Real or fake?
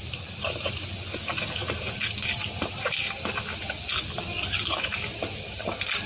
real